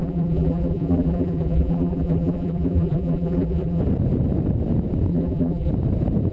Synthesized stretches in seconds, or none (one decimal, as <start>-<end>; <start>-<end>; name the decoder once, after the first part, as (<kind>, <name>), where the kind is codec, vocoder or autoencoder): 0.0-3.8 (vocoder, BigVGAN v2); 5.1-5.7